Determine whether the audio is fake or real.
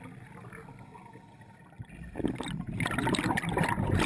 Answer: real